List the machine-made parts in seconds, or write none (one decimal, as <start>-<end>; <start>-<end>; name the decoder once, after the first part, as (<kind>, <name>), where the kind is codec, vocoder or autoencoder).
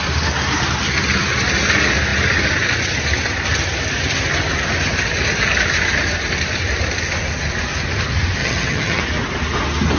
8.4-9.0 (vocoder, HiFi-GAN)